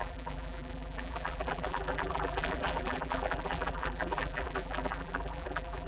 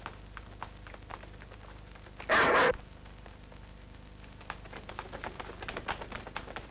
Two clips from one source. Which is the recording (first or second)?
second